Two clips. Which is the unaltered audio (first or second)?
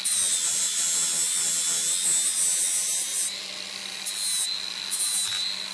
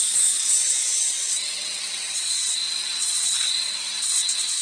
first